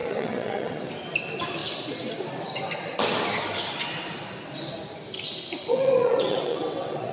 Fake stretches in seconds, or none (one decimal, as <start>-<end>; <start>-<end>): 0.0-0.9; 5.7-7.1